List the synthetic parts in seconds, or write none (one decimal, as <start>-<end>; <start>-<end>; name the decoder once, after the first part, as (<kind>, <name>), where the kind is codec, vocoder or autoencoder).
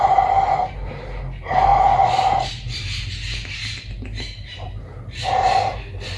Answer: none